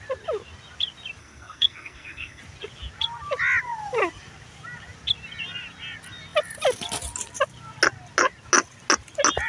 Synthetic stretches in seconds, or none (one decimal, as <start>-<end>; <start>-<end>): 1.2-2.4